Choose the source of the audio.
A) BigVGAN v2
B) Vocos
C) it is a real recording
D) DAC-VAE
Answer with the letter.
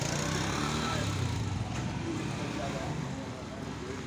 C